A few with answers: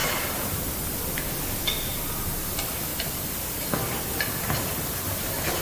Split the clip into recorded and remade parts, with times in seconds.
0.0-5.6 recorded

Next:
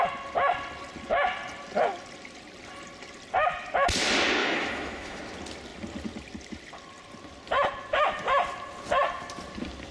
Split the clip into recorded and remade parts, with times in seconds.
0.0-4.4 recorded; 4.4-5.2 remade; 5.2-9.9 recorded

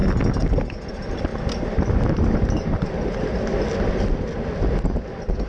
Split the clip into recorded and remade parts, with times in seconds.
0.0-5.5 recorded

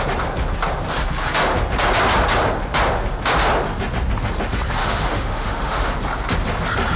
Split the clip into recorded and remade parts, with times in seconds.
0.0-4.8 recorded; 4.8-5.9 remade; 5.9-7.0 recorded